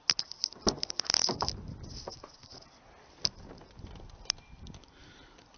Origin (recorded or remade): recorded